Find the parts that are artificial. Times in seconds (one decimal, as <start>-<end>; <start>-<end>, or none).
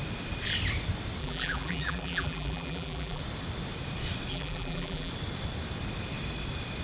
1.2-3.2; 4.3-5.1